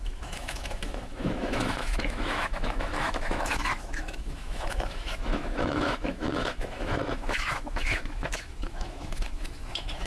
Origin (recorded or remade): remade